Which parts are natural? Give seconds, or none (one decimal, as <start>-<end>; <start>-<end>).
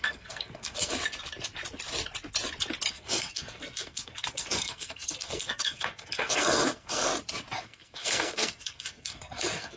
0.9-2.9; 7.1-7.6